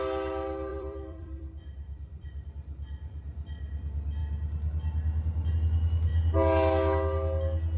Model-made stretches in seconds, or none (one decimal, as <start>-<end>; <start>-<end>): 0.7-2.5